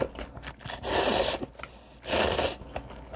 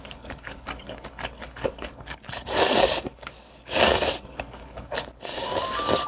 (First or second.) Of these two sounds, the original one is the first